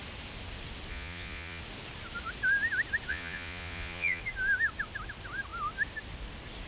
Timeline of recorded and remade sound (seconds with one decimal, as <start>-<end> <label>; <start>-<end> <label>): 0.0-0.9 recorded; 0.9-1.6 remade; 1.6-3.1 recorded; 3.1-4.2 remade; 4.2-6.7 recorded